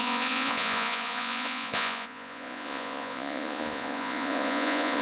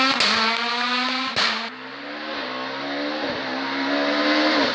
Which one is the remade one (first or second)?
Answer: first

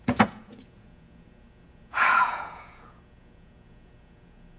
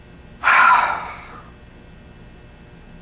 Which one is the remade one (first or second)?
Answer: first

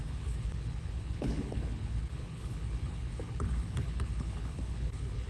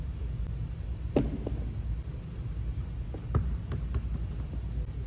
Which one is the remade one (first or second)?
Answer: first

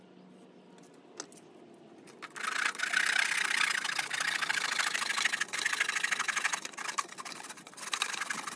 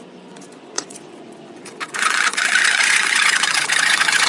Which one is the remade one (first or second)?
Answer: second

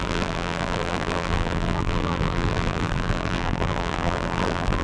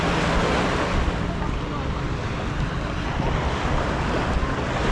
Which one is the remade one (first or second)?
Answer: first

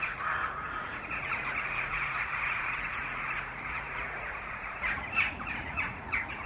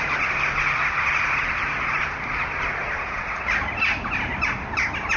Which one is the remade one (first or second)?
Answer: first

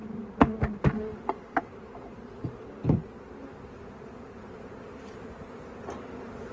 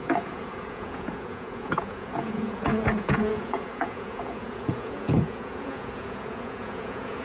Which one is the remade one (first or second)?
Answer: second